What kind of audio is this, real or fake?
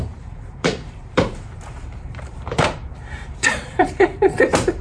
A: fake